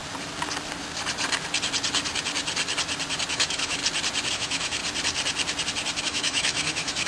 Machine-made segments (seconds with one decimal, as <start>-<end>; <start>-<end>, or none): 3.3-3.8; 4.3-4.8; 6.0-7.1